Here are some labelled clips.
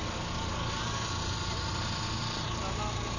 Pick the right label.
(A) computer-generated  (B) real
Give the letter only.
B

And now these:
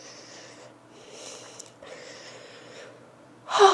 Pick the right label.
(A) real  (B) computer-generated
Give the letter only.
A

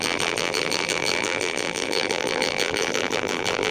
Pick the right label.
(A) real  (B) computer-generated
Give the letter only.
B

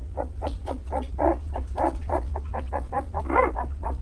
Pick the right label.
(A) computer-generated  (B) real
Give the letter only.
A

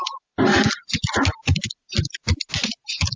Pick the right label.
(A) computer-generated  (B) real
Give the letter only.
B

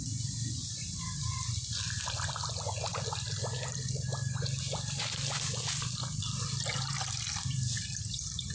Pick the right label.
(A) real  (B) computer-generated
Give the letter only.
A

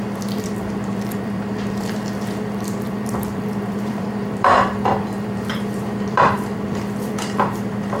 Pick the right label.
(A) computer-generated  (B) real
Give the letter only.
A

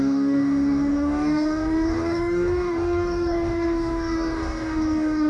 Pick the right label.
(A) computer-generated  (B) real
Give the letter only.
A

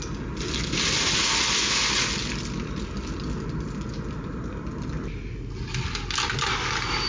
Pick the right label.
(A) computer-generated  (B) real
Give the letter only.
B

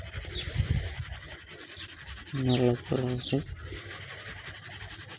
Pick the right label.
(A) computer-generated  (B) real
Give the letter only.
B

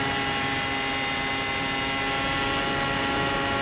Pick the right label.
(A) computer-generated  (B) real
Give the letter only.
B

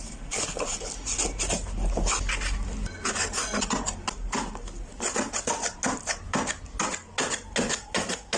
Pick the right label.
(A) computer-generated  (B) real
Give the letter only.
B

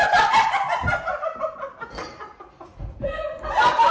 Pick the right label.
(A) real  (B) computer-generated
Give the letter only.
A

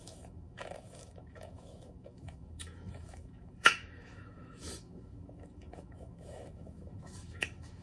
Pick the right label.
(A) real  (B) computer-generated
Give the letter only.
B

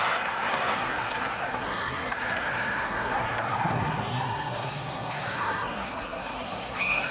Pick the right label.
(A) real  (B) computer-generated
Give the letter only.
B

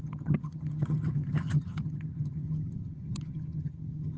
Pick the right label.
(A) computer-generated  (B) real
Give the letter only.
A